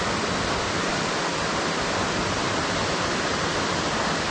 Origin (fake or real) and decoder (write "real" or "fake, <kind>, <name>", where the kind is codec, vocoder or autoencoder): real